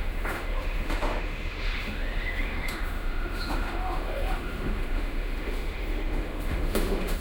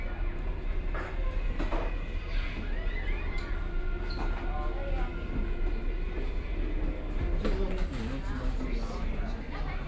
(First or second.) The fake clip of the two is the first